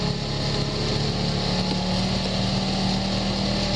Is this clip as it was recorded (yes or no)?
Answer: yes